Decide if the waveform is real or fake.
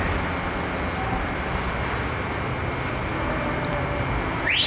real